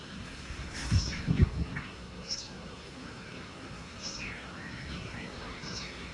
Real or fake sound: fake